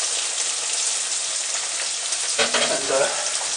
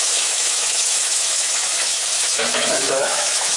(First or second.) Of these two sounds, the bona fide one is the first